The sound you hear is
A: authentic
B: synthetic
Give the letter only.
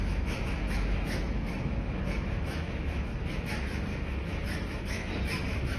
B